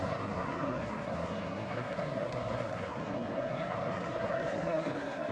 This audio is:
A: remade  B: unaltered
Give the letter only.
A